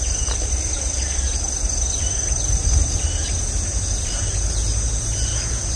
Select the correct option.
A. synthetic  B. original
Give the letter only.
A